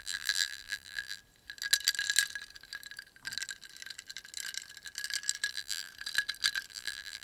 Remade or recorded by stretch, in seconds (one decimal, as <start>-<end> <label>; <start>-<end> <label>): 0.0-1.2 remade; 1.2-5.5 recorded; 5.5-5.9 remade; 5.9-6.7 recorded; 6.7-7.2 remade